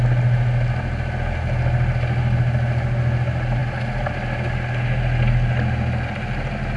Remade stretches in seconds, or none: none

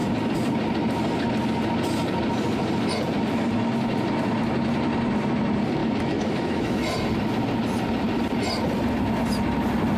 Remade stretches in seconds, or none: 5.8-6.8 (autoencoder, DAC-VAE)

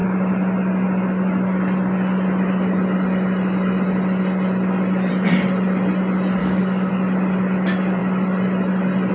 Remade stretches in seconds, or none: 6.4-6.9 (codec, DAC)

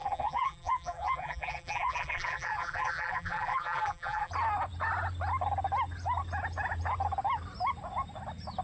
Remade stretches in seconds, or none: 0.0-4.3 (vocoder, BigVGAN v2)